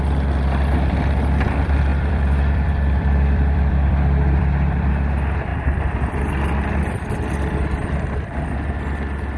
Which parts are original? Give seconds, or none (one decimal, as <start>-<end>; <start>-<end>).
0.0-1.9; 4.9-7.8; 8.3-9.4